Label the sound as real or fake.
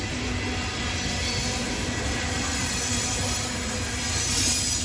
real